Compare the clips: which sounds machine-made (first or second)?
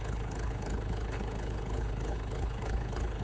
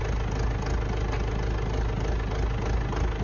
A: first